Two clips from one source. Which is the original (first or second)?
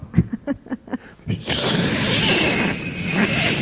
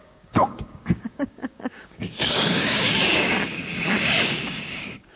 first